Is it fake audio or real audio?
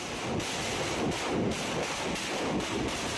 real